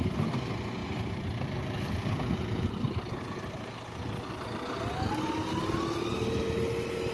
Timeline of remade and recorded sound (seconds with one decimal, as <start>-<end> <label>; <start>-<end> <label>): 0.0-7.1 recorded